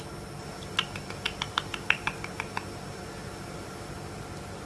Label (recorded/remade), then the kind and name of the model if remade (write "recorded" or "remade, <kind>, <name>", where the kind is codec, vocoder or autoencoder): recorded